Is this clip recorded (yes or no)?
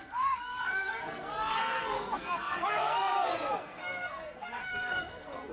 no